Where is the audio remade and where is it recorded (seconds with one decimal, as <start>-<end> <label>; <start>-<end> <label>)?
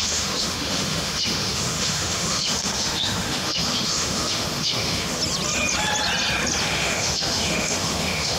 0.0-5.2 remade; 5.2-6.6 recorded; 6.6-8.4 remade